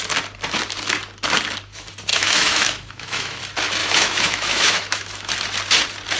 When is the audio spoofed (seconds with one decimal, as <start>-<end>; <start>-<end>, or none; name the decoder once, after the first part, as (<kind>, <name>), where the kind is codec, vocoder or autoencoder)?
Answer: 2.1-3.4 (autoencoder, DAC-VAE); 3.8-5.3